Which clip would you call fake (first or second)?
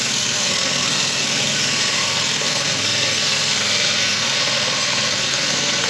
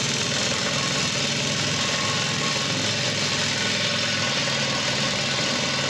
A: first